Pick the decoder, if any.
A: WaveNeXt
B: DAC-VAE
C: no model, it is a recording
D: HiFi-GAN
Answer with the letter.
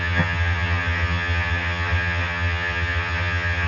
D